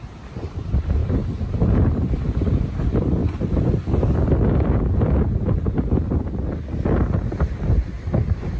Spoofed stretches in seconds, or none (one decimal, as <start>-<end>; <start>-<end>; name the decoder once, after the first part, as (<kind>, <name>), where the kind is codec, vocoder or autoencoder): 0.0-3.2 (vocoder, BigVGAN v2); 7.5-8.6